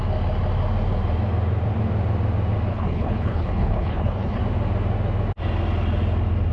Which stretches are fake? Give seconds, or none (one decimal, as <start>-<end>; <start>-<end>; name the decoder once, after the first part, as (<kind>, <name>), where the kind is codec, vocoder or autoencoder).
2.7-4.4 (codec, HILCodec)